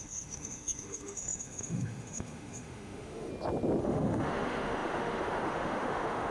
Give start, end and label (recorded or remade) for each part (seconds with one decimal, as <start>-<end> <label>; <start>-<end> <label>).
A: 0.0-3.3 remade; 3.3-3.8 recorded; 3.8-6.3 remade